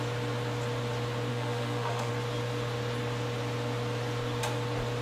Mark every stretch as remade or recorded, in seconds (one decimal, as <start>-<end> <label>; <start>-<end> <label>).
0.0-1.3 recorded; 1.3-2.1 remade; 2.1-5.0 recorded

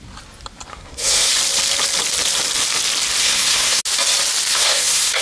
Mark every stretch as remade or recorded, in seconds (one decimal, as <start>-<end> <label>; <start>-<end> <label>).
0.0-0.7 recorded; 0.7-1.3 remade; 1.3-3.2 recorded; 3.2-3.8 remade; 3.8-4.5 recorded; 4.5-5.2 remade

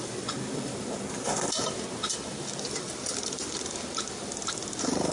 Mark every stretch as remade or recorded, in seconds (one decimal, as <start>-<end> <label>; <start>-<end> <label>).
0.0-5.1 recorded

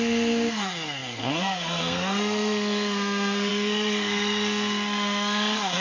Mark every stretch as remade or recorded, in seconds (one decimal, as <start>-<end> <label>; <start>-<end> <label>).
0.0-5.8 remade

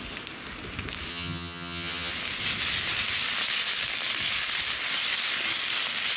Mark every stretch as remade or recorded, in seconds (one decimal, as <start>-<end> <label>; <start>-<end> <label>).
0.0-1.1 recorded; 1.1-2.1 remade; 2.1-6.2 recorded

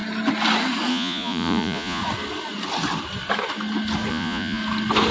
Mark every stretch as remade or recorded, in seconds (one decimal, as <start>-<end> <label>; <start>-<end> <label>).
0.0-0.9 recorded; 0.9-2.0 remade; 2.0-4.1 recorded; 4.1-4.6 remade; 4.6-5.1 recorded

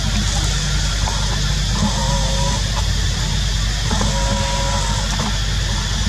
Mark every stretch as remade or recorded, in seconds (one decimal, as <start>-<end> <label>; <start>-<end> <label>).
0.0-6.1 recorded

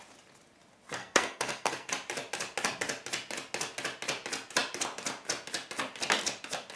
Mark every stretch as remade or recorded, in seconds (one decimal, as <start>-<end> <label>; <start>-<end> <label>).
0.0-1.0 recorded; 1.0-1.9 remade; 1.9-6.8 recorded